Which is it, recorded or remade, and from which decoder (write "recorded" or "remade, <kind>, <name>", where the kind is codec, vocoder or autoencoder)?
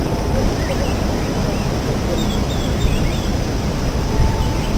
remade, vocoder, BigVGAN v2